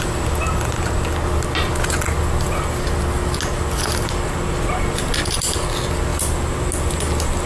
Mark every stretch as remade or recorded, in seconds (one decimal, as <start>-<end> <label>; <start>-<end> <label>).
0.0-7.5 recorded